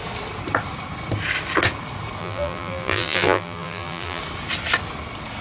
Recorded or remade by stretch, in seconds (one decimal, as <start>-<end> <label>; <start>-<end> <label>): 0.0-2.2 recorded; 2.2-4.2 remade; 4.2-5.4 recorded